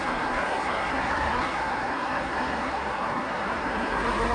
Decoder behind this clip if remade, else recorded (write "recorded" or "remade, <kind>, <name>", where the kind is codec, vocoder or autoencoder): remade, codec, SNAC